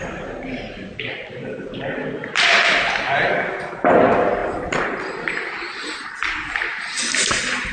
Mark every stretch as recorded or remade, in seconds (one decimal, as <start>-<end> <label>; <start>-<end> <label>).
0.0-7.7 recorded